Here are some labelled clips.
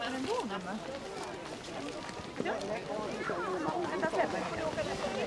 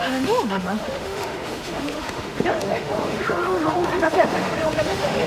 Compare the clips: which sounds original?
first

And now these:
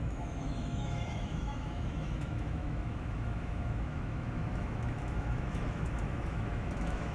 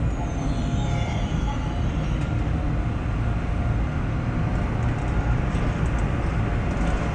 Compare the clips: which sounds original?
second